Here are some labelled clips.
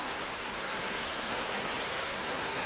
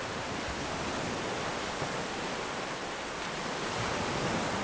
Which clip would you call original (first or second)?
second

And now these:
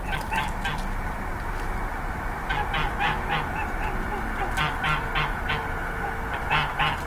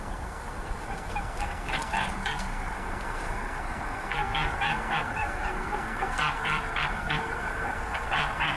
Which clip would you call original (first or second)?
first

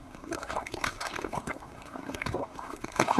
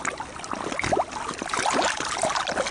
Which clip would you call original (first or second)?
second